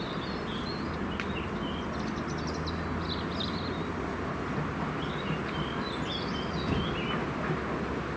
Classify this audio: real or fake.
real